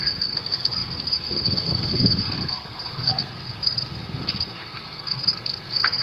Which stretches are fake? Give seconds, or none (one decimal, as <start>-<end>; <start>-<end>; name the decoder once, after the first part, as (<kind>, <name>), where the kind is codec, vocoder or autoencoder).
0.0-6.0 (codec, SNAC)